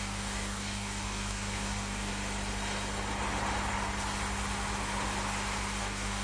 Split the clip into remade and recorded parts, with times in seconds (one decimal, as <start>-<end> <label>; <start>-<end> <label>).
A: 0.0-2.1 remade; 2.1-5.8 recorded; 5.8-6.2 remade